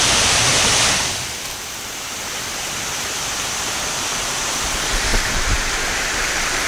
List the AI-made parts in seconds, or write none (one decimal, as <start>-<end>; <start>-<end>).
0.0-6.7

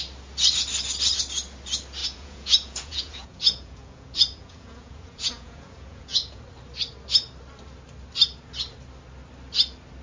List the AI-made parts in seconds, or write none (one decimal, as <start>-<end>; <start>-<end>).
2.0-6.4